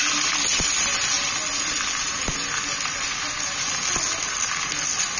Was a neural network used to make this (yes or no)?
no